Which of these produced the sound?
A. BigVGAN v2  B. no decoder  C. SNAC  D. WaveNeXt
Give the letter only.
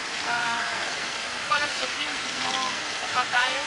C